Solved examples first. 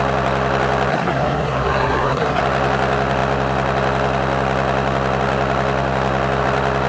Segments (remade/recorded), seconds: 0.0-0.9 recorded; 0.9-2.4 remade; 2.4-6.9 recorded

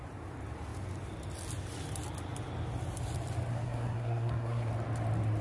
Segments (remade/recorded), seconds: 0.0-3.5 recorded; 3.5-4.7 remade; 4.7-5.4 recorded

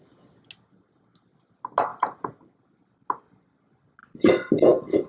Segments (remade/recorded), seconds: 0.0-5.1 recorded

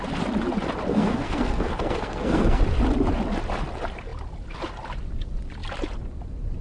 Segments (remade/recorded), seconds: 0.0-0.9 recorded; 0.9-2.6 remade; 2.6-6.6 recorded